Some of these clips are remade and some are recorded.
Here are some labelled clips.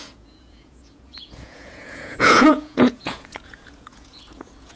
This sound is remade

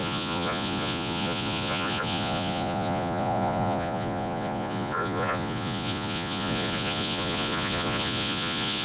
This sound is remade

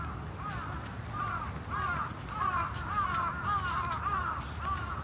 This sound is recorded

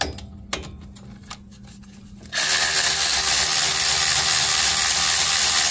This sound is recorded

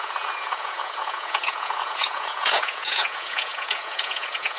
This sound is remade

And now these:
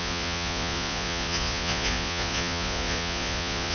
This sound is remade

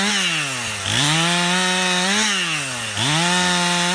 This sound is recorded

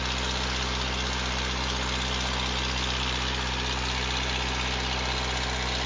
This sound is recorded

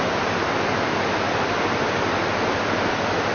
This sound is recorded